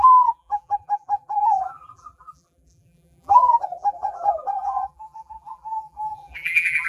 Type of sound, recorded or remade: remade